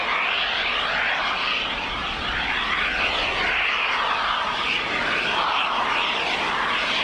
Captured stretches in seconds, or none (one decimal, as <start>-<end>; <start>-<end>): 0.0-7.0